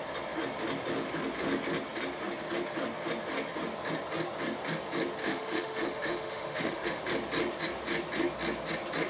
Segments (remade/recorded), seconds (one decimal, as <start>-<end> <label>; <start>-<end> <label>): 0.0-5.2 recorded; 5.2-7.0 remade; 7.0-9.1 recorded